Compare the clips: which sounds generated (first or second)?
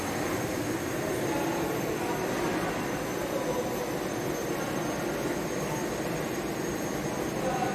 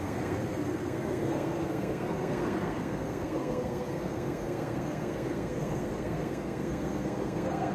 second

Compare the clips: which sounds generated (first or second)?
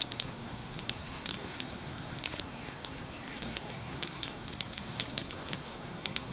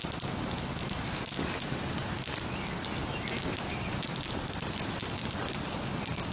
first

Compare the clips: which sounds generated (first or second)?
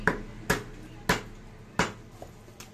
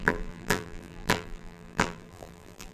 second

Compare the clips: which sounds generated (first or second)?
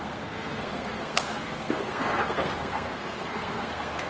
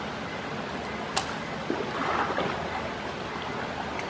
first